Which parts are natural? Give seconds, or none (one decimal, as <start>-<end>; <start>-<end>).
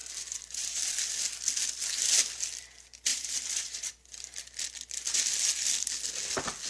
0.8-3.1; 3.9-6.7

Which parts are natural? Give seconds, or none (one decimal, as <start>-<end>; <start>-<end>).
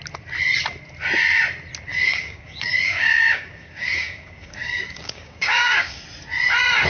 0.0-1.9; 6.0-6.9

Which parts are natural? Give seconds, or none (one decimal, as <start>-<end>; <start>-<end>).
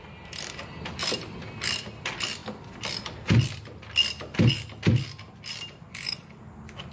0.0-5.9; 6.4-6.9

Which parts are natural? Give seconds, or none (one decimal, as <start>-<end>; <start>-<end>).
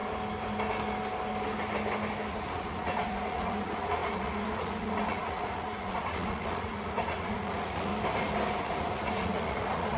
0.0-2.3; 7.9-8.6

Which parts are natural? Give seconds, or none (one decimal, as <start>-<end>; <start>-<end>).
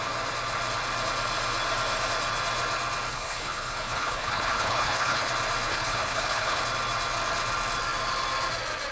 0.0-3.1; 5.3-5.7; 6.6-8.9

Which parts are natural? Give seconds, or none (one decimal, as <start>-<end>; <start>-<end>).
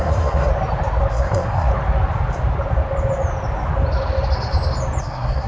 0.5-1.1; 1.7-5.0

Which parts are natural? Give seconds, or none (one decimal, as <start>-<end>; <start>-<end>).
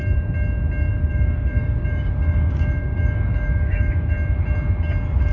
0.0-0.9; 4.1-5.3